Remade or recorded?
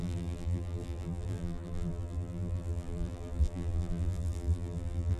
remade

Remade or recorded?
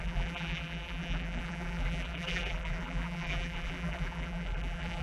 remade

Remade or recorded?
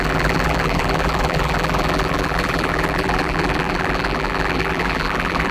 remade